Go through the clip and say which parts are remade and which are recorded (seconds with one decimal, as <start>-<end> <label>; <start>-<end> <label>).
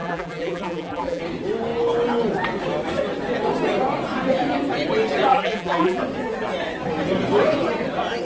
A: 0.0-1.2 remade; 1.2-5.3 recorded; 5.3-6.0 remade; 6.0-8.2 recorded